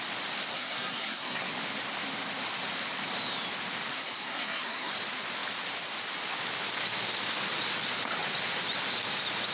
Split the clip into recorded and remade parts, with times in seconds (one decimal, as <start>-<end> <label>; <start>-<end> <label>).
0.0-0.5 recorded; 0.5-1.5 remade; 1.5-3.9 recorded; 3.9-4.9 remade; 4.9-9.5 recorded